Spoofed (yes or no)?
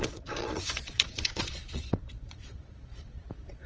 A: yes